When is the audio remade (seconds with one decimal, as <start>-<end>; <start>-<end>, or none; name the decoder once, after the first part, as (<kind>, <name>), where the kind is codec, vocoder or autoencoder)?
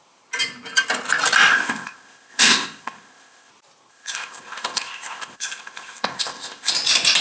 1.5-3.5 (codec, ZipCodec); 3.9-6.7